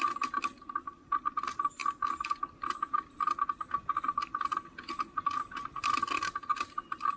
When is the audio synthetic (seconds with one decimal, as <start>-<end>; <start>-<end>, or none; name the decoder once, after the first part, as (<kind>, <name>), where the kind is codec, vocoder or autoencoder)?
none